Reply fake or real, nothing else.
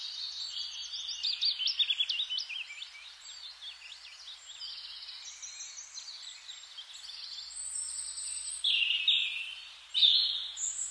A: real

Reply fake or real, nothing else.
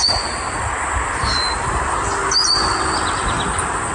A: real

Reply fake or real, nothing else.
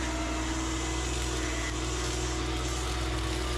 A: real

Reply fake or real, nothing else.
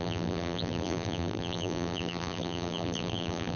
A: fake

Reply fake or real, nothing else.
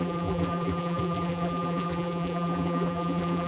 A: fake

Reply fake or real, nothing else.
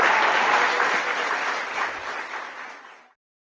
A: real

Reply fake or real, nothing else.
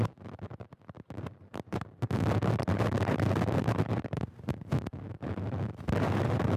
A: fake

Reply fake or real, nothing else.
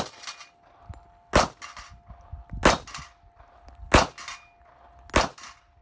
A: real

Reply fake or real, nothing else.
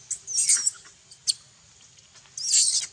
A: real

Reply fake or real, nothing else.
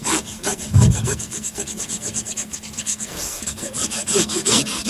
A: fake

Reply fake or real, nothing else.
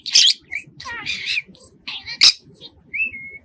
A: real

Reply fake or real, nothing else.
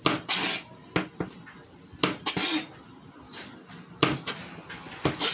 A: real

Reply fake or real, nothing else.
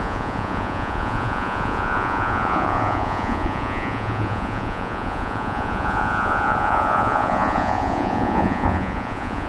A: fake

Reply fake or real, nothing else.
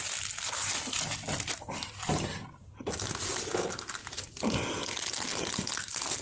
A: real